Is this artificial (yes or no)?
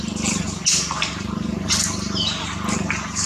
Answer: no